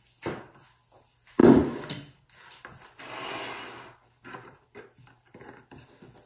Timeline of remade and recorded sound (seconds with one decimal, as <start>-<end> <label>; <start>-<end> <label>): 0.0-1.4 recorded; 1.4-2.6 remade; 2.6-6.3 recorded